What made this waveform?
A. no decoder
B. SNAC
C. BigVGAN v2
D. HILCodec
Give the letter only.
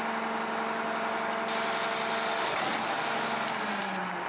A